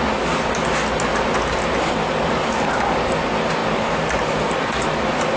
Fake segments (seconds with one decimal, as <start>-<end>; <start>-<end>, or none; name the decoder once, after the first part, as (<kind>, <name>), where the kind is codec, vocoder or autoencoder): none